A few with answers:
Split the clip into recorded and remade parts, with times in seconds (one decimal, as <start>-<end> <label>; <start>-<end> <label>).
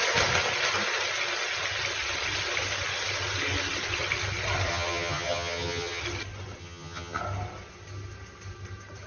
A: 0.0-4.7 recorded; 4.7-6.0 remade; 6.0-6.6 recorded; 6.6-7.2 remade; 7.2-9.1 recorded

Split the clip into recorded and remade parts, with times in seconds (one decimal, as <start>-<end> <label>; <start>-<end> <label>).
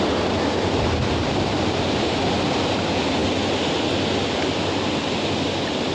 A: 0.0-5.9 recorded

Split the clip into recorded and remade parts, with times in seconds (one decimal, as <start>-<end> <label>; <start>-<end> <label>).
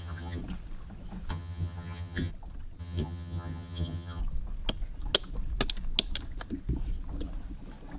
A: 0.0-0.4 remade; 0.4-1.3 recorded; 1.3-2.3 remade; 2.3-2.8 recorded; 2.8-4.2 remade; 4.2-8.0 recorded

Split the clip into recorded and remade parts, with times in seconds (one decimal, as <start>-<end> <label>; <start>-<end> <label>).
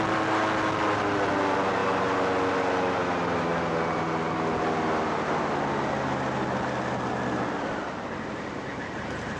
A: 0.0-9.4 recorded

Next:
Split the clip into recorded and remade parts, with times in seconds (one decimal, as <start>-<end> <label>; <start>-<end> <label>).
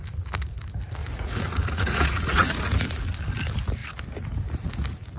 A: 0.0-1.0 recorded; 1.0-2.6 remade; 2.6-5.2 recorded